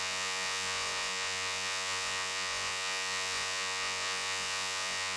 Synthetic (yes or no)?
yes